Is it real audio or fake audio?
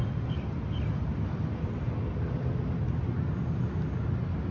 real